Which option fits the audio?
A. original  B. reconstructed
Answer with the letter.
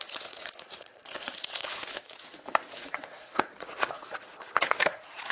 B